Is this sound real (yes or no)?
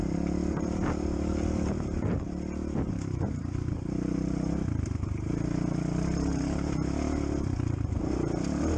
yes